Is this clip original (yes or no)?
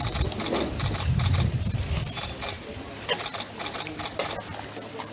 yes